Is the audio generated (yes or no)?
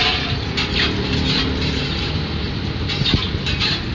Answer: yes